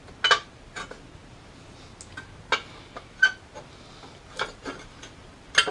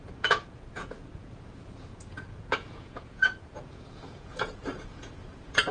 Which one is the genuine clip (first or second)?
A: first